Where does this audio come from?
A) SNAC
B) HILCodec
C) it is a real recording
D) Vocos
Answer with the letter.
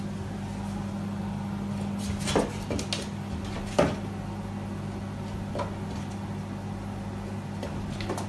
C